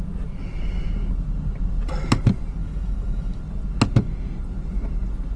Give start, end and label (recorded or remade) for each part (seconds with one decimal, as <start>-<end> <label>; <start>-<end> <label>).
0.0-2.6 recorded; 2.6-3.4 remade; 3.4-5.4 recorded